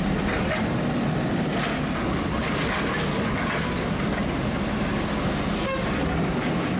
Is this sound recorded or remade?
recorded